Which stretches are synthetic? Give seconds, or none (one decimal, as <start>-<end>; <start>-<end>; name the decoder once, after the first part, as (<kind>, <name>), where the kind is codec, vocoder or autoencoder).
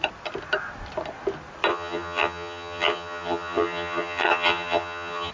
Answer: 1.7-5.3 (vocoder, HiFi-GAN)